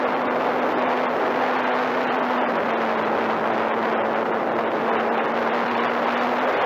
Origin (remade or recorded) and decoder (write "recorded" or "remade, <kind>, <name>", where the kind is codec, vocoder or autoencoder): recorded